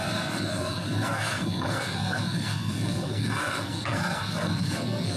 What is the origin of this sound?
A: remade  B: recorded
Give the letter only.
A